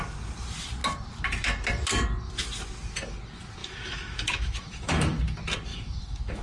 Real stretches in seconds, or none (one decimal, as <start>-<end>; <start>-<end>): 0.0-3.6; 5.2-5.7